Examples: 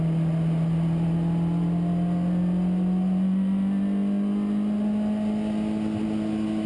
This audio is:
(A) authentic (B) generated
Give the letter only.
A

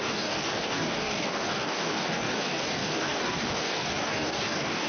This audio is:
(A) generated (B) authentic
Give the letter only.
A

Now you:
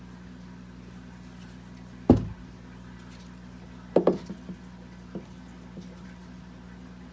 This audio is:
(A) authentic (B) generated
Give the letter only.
A